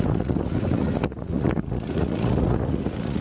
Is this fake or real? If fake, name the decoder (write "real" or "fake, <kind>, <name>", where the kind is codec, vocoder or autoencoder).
fake, vocoder, Vocos